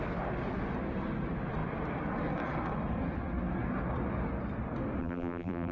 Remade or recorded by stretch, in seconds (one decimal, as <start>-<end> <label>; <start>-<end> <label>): 0.0-5.0 recorded; 5.0-5.7 remade